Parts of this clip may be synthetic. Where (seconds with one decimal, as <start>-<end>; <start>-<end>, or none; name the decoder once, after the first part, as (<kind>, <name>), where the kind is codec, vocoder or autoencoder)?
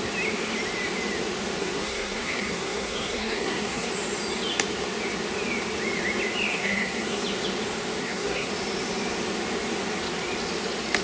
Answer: 1.6-3.9 (codec, SNAC); 6.5-7.2; 8.0-8.5